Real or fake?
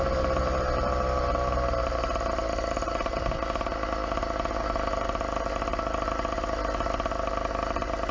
real